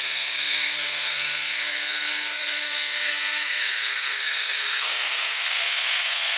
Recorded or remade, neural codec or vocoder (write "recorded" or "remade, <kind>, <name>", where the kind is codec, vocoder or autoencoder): remade, codec, SNAC